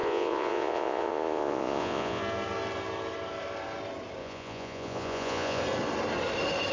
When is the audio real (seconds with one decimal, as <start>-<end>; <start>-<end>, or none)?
2.2-4.2; 5.6-6.7